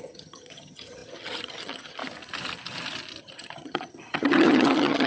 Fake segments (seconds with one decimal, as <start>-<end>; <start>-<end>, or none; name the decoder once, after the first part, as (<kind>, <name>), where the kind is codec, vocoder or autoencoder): 0.0-2.0 (vocoder, HiFi-GAN); 3.2-5.1